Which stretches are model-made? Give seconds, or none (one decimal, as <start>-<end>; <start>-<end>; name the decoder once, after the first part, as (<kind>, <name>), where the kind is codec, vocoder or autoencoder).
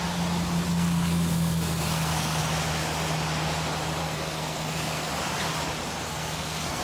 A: 0.7-2.4 (codec, SNAC); 4.0-5.1; 6.1-6.8